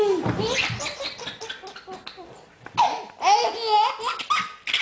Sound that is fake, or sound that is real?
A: real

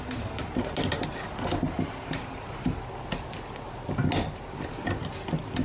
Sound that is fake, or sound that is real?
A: real